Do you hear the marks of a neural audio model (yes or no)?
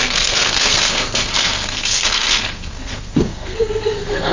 yes